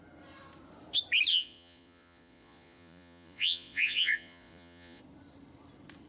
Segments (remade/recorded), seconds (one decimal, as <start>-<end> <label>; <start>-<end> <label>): 0.0-1.3 recorded; 1.3-5.0 remade; 5.0-6.1 recorded